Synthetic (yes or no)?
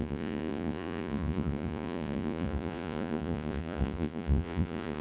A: yes